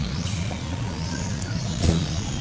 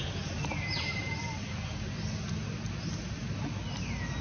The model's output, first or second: first